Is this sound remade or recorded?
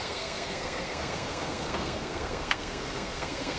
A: remade